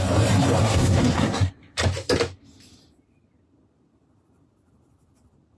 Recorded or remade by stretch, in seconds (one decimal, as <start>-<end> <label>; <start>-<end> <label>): 0.0-0.6 recorded; 0.6-1.5 remade; 1.5-5.6 recorded

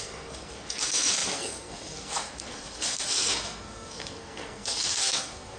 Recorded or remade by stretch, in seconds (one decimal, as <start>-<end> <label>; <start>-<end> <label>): 0.0-5.6 remade